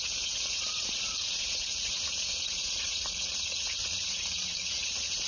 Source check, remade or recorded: remade